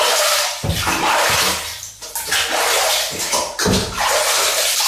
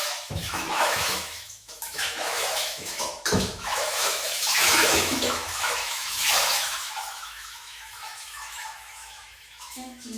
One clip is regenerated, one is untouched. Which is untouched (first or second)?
first